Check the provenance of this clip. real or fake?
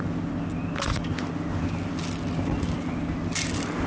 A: real